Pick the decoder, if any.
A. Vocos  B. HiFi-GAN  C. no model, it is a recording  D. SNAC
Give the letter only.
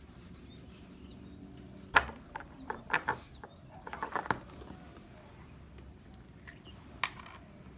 C